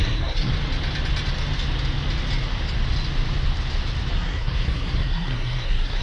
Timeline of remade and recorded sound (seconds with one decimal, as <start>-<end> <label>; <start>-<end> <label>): 0.0-0.5 remade; 0.5-4.1 recorded; 4.1-6.0 remade